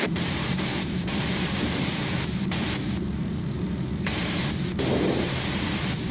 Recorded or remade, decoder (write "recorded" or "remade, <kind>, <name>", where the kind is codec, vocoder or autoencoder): remade, vocoder, BigVGAN v2